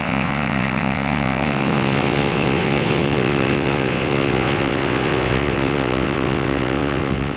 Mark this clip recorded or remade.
remade